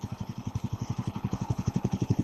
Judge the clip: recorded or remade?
remade